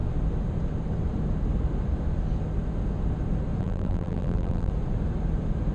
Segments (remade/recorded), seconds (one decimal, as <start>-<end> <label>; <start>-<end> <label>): 0.0-3.6 recorded; 3.6-4.7 remade; 4.7-5.7 recorded